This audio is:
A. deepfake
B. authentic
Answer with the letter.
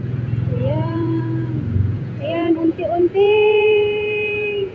A